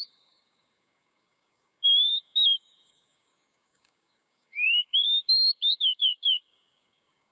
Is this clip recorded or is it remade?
remade